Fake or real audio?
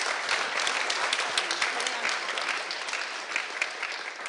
real